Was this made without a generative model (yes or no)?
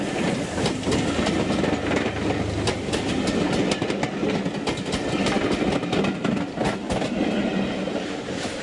yes